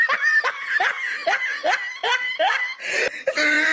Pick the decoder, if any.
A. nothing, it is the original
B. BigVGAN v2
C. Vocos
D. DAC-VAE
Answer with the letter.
A